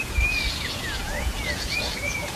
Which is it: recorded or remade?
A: remade